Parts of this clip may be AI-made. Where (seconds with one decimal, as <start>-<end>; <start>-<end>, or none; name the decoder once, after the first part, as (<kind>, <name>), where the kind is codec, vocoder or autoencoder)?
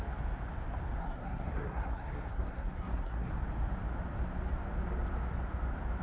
1.0-3.3 (codec, SNAC)